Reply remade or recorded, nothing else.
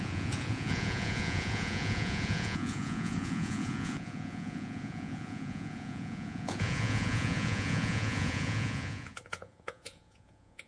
remade